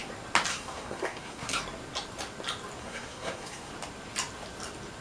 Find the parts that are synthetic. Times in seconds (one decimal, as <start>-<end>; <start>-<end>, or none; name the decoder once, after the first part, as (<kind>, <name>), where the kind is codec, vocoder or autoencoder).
0.5-1.6 (codec, SNAC); 2.8-3.7